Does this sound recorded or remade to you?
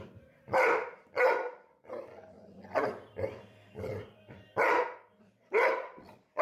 remade